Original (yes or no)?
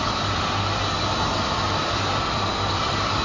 yes